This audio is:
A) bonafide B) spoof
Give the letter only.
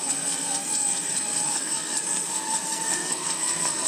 B